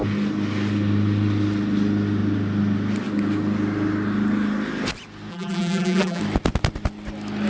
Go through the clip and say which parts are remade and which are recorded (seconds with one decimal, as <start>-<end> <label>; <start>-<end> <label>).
0.0-5.3 recorded; 5.3-6.2 remade; 6.2-7.5 recorded